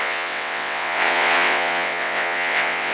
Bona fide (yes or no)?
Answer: no